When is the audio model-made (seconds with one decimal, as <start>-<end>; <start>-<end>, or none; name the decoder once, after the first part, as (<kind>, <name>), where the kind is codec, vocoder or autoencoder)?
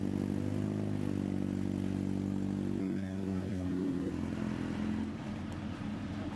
2.8-4.1 (codec, SNAC)